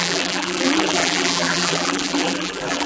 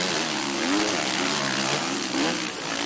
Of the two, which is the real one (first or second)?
second